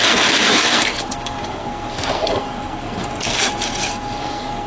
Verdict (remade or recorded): remade